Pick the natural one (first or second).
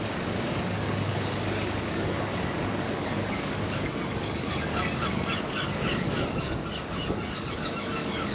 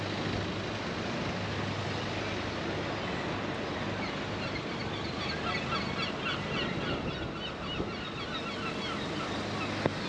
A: second